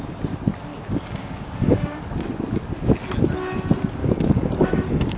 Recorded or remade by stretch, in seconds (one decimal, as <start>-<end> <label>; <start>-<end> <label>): 0.0-0.7 recorded; 0.7-2.0 remade; 2.0-4.0 recorded; 4.0-5.2 remade